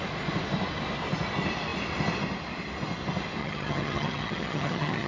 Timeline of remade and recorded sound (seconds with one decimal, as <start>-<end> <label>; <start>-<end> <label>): 0.0-3.4 recorded; 3.4-5.1 remade